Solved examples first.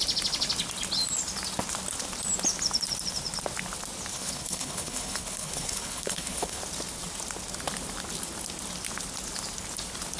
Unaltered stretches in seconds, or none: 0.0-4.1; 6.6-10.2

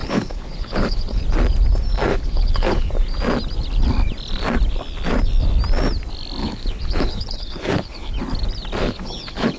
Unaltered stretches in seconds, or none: 1.2-2.1; 2.9-6.4; 8.2-8.8

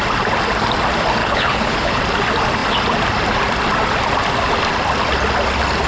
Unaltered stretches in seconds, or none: 0.0-1.2; 2.0-5.9

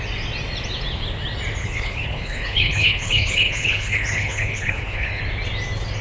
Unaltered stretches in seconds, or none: 0.0-1.6; 5.2-6.0

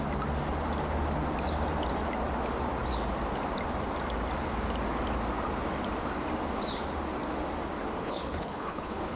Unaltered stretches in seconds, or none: 0.0-8.0

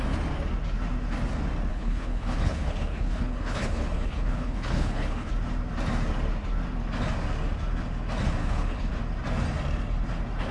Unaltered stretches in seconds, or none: 0.0-1.7; 5.3-8.4; 8.9-10.5

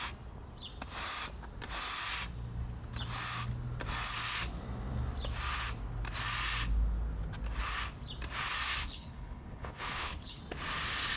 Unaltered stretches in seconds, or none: 0.0-8.8; 10.4-11.2